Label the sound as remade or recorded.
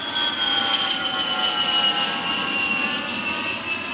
recorded